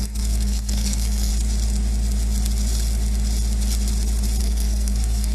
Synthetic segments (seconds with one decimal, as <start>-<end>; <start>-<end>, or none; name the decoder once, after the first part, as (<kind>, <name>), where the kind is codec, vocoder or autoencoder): 0.0-1.3 (codec, SNAC); 4.4-5.3

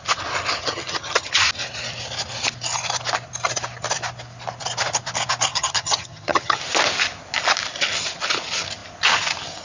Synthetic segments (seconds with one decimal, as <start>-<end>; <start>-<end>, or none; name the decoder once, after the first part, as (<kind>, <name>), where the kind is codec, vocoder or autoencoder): 0.6-1.3 (vocoder, HiFi-GAN); 5.5-6.6